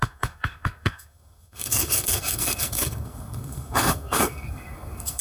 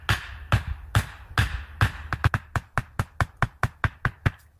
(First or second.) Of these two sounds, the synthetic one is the first